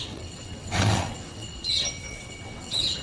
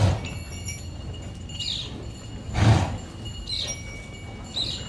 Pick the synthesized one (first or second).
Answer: first